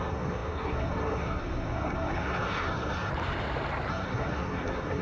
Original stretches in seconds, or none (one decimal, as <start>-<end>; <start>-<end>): 3.1-3.9